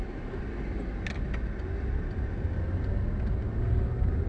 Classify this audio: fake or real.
real